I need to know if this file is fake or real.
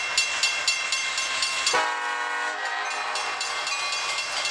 real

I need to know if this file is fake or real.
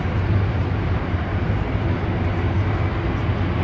real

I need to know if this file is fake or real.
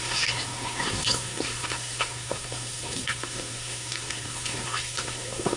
fake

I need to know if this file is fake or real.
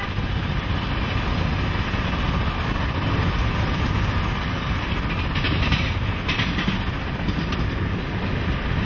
real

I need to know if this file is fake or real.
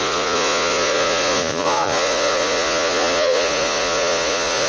fake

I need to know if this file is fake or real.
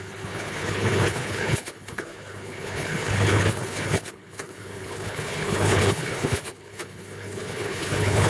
fake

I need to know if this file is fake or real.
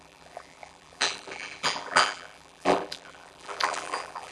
fake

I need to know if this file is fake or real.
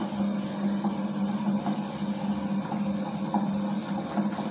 real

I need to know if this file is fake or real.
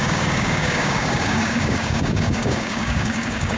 fake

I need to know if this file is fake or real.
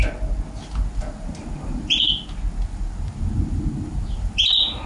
real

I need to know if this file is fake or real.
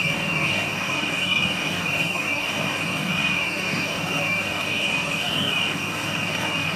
fake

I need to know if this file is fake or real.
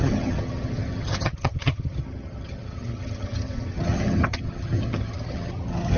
fake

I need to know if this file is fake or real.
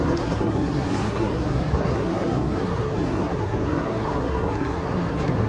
fake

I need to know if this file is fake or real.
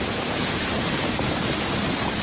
fake